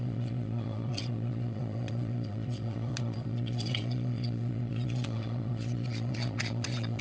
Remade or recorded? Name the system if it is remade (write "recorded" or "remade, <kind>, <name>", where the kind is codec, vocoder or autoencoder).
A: remade, vocoder, Vocos